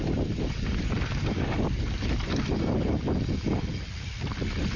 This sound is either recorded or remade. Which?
recorded